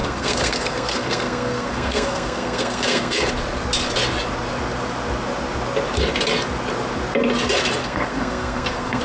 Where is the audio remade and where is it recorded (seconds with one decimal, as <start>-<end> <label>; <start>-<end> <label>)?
0.0-3.3 remade; 3.3-7.8 recorded; 7.8-9.0 remade